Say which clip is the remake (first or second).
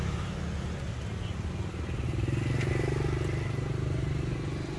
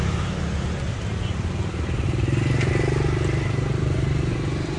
second